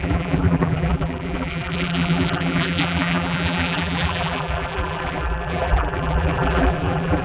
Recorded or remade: remade